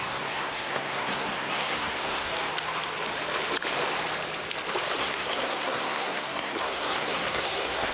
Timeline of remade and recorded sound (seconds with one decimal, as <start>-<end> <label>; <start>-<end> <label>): 0.0-2.3 remade; 2.3-5.0 recorded; 5.0-7.9 remade